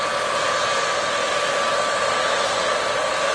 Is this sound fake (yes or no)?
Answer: no